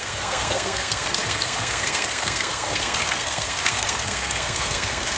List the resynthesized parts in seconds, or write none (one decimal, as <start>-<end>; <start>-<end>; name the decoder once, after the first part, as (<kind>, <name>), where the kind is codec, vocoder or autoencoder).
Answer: 0.0-5.2 (codec, SNAC)